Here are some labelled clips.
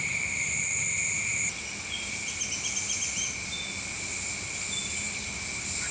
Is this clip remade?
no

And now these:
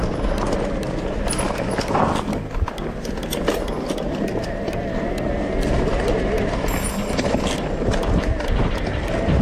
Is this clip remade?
no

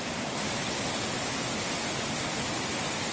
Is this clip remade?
no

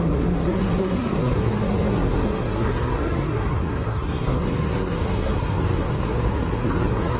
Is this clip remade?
yes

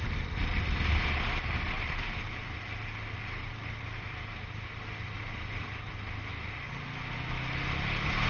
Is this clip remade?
no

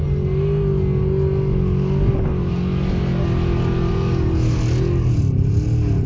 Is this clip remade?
no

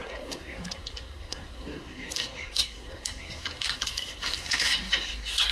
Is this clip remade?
yes